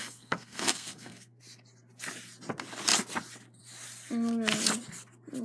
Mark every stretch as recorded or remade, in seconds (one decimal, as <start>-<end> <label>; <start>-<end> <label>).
0.0-1.4 remade; 1.4-5.4 recorded